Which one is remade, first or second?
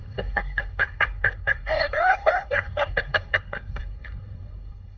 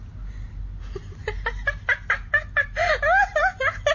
first